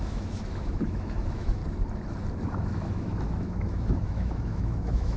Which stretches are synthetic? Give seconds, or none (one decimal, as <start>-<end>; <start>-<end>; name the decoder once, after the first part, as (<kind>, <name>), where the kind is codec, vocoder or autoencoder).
0.0-1.6 (autoencoder, DAC-VAE); 2.5-5.2